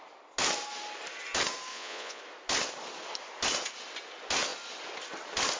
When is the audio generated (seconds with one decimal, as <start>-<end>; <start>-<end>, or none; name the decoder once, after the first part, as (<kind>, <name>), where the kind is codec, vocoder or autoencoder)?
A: 1.7-2.2 (vocoder, Vocos)